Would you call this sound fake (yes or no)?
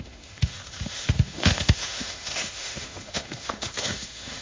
yes